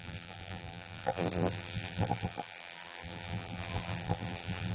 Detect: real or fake fake